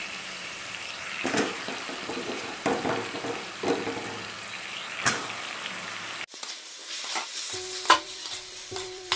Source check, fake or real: fake